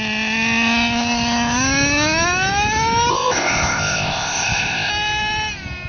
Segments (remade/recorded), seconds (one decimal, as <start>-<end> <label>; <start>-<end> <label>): 0.0-3.1 recorded; 3.1-4.9 remade; 4.9-5.9 recorded